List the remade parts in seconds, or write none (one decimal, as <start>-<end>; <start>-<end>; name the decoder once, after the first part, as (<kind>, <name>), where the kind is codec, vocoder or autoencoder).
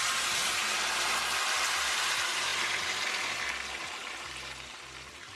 none